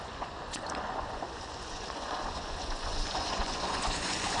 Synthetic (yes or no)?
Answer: yes